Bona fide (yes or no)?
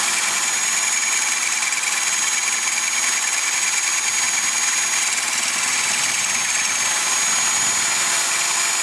yes